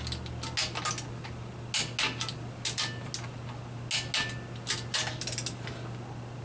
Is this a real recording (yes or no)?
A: yes